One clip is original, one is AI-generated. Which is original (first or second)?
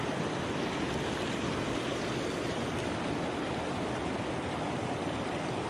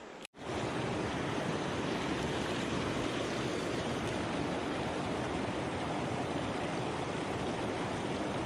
first